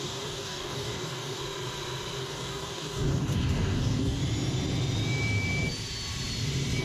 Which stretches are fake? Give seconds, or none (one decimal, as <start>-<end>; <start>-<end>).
0.0-1.4; 2.2-4.2